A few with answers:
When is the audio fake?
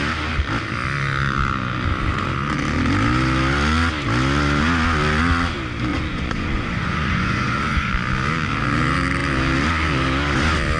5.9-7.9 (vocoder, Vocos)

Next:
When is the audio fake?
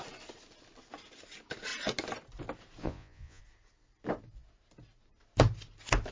2.8-3.4 (vocoder, Vocos)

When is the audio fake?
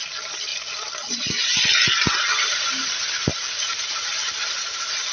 none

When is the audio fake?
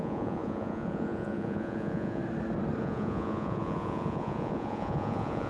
0.0-2.2 (vocoder, Vocos); 2.8-5.5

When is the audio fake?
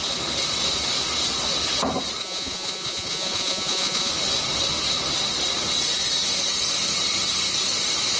2.2-4.1 (vocoder, Vocos)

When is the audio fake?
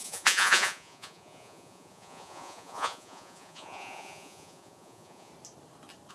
0.0-5.3 (vocoder, Vocos)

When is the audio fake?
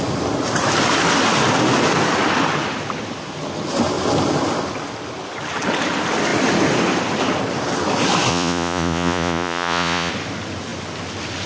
8.3-10.1 (vocoder, Vocos)